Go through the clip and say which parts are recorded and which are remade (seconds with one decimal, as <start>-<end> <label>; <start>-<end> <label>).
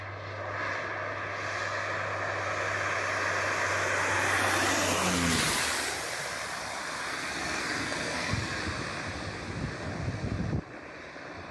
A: 0.0-7.1 recorded; 7.1-8.6 remade; 8.6-11.5 recorded